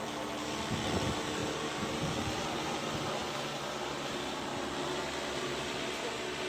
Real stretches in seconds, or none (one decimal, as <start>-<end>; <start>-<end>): 0.0-6.5